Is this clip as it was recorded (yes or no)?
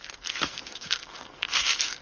no